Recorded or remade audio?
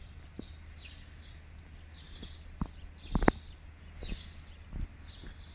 recorded